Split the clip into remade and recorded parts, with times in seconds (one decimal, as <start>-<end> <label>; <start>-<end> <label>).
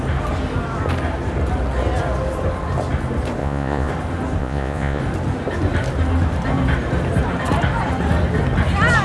0.0-3.4 recorded; 3.4-3.9 remade; 3.9-4.4 recorded; 4.4-5.0 remade; 5.0-9.0 recorded